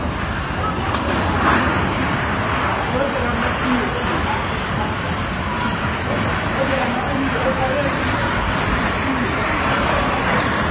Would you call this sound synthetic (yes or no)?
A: no